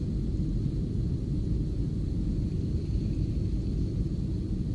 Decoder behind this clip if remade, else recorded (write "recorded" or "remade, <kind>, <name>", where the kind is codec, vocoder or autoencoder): recorded